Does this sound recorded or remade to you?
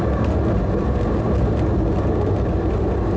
recorded